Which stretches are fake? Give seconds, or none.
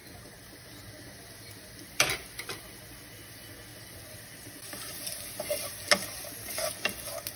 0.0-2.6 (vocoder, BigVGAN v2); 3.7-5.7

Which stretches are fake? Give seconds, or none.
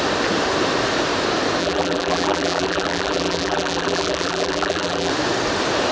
1.6-5.1 (vocoder, BigVGAN v2)